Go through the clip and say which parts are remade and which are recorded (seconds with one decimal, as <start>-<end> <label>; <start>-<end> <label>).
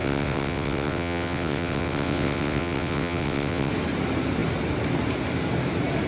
0.0-3.7 remade; 3.7-6.1 recorded